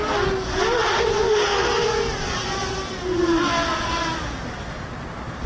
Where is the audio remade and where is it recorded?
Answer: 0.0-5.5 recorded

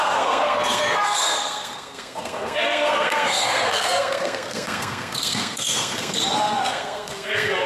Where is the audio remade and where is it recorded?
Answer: 0.0-7.7 remade

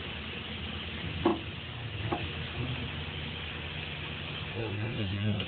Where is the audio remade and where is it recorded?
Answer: 0.0-4.5 recorded; 4.5-5.5 remade

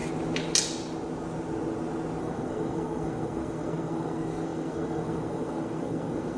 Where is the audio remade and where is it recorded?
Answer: 0.0-2.2 recorded; 2.2-6.4 remade